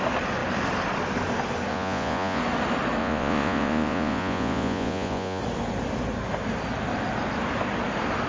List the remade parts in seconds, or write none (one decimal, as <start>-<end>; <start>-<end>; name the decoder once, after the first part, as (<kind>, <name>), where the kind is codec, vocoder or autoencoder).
1.7-2.4 (vocoder, Vocos); 3.0-5.4